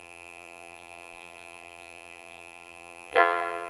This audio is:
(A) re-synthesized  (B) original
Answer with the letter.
A